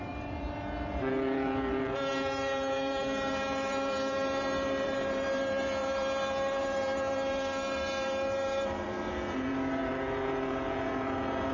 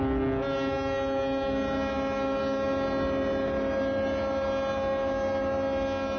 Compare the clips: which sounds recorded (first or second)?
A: second